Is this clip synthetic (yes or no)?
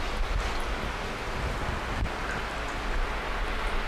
no